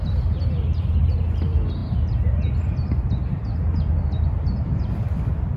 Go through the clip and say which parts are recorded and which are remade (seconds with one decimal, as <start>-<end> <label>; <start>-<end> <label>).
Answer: 0.0-5.6 recorded

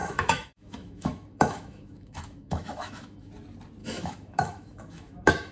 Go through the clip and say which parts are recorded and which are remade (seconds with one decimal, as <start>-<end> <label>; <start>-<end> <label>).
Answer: 0.0-3.3 remade; 3.3-3.8 recorded; 3.8-5.5 remade

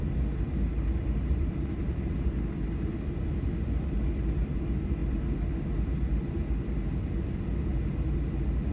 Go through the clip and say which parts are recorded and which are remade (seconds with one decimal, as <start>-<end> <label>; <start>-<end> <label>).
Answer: 0.0-8.7 recorded

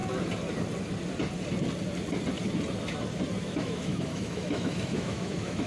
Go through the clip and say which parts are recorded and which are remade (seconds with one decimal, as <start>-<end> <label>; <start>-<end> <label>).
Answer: 0.0-3.4 recorded; 3.4-5.7 remade

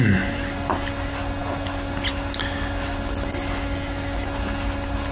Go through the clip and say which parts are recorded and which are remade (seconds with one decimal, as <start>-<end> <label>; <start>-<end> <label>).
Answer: 0.0-5.1 recorded

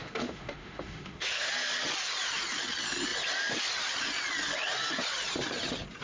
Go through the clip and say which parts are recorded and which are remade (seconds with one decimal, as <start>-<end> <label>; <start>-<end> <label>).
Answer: 0.0-1.5 remade; 1.5-6.0 recorded

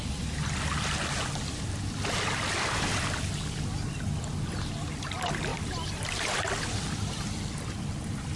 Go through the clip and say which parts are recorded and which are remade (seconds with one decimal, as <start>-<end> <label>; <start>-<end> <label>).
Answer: 0.0-8.4 recorded